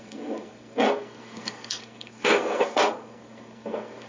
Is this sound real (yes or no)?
no